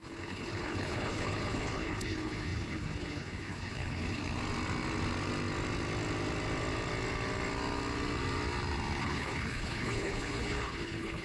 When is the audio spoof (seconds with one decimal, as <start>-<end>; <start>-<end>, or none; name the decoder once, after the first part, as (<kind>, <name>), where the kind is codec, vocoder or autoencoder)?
0.0-4.2 (codec, HILCodec); 9.0-11.2